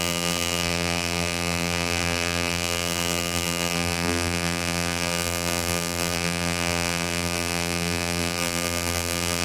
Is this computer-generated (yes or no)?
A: yes